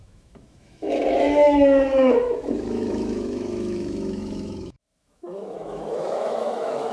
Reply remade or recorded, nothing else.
remade